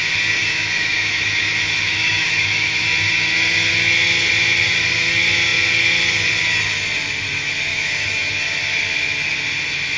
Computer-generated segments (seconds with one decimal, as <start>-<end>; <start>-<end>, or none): 0.4-2.8; 7.7-8.3